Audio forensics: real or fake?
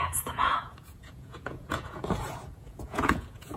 fake